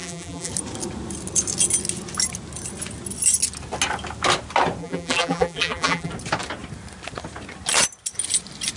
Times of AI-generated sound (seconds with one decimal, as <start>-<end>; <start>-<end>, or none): 0.0-0.5; 4.8-6.1